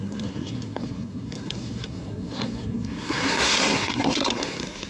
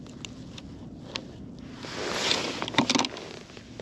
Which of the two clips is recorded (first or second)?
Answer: second